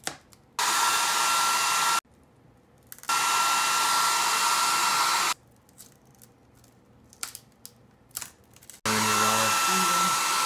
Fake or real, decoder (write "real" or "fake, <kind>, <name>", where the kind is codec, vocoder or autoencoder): real